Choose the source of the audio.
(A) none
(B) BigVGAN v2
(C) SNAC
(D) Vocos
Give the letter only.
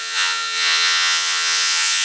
D